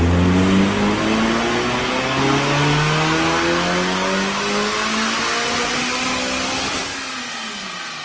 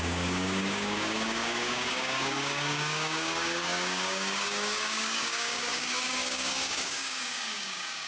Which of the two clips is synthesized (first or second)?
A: second